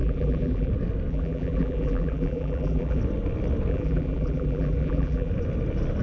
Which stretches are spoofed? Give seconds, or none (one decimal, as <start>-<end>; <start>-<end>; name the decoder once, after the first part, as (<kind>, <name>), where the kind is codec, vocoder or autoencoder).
0.0-0.7 (vocoder, BigVGAN v2); 1.1-3.0; 3.7-5.3